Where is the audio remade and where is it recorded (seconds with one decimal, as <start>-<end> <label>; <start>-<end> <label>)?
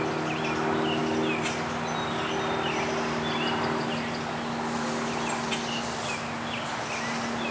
0.0-7.5 recorded